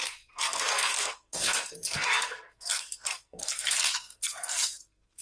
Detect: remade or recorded remade